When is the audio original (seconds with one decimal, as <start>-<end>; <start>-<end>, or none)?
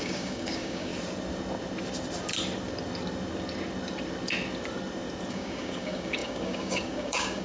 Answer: 0.9-5.3